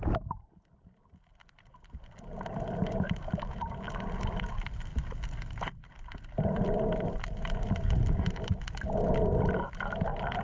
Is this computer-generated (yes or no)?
no